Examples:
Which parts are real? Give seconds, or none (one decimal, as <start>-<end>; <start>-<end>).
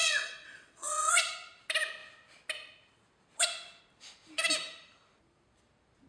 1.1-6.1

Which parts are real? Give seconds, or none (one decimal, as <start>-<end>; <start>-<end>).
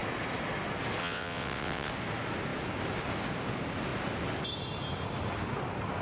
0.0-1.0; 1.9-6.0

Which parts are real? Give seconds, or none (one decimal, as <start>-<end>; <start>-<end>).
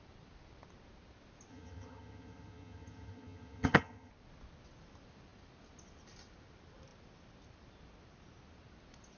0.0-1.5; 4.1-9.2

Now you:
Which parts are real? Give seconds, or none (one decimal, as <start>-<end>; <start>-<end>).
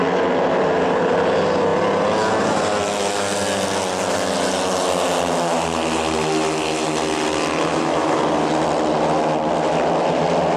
0.0-7.7; 8.2-10.6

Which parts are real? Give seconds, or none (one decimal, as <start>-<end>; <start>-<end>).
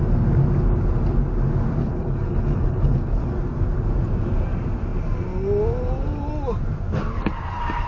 0.0-1.8; 3.3-7.9